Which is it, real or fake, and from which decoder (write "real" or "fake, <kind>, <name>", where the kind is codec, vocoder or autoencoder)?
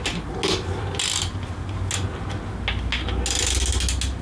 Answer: real